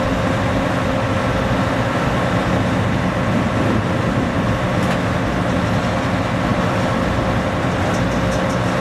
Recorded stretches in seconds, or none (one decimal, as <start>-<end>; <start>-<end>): 0.0-8.8